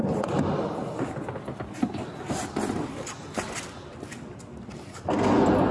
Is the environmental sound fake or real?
real